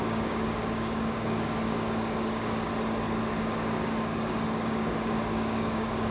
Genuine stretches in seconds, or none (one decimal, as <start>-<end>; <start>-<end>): 2.7-3.3